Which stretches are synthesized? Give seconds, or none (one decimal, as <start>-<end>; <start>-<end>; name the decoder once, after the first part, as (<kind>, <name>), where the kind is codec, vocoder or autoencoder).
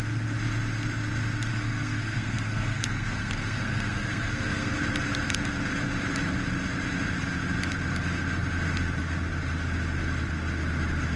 1.5-4.7 (codec, SNAC)